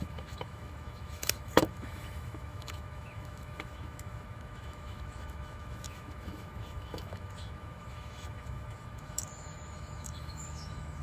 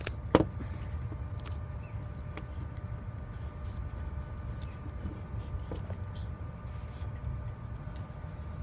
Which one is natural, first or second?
second